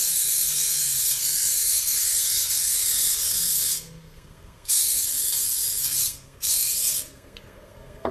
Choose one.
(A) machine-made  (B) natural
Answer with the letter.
A